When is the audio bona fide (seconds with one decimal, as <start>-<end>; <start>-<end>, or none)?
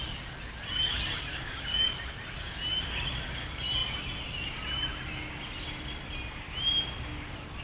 0.0-1.3; 2.0-7.6